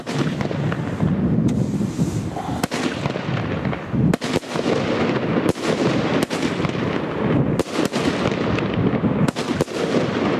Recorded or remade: recorded